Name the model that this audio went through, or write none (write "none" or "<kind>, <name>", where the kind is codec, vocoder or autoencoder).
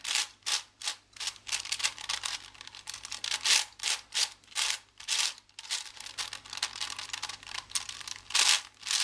none